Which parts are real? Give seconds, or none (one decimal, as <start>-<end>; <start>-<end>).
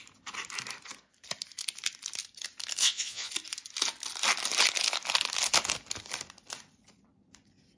0.0-2.8; 3.3-7.8